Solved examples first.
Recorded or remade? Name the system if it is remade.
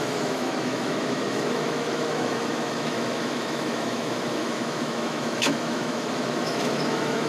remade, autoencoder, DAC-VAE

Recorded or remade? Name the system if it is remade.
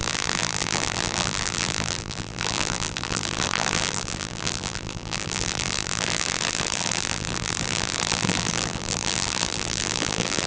remade, vocoder, BigVGAN v2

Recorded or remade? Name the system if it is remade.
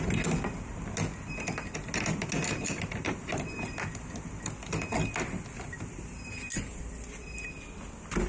recorded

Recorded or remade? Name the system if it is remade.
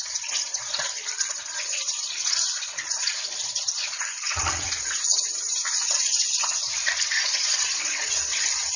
remade, vocoder, Vocos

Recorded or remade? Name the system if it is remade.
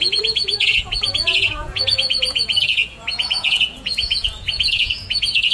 remade, vocoder, Vocos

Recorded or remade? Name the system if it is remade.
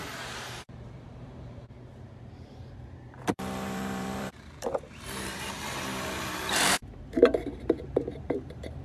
remade, vocoder, BigVGAN v2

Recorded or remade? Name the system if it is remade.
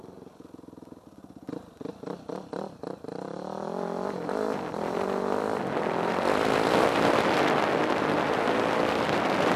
recorded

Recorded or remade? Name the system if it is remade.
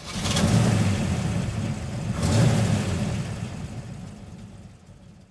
recorded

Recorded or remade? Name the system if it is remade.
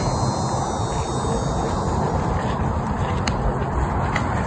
recorded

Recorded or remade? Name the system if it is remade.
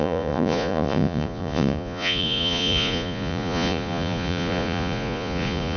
remade, vocoder, Vocos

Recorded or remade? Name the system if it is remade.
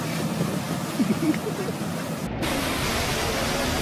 recorded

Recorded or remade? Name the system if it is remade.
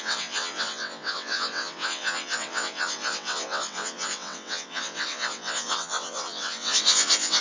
remade, vocoder, WaveNeXt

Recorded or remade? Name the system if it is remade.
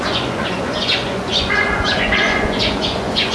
remade, vocoder, Vocos